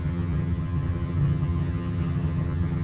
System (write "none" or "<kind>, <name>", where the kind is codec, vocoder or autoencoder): vocoder, HiFi-GAN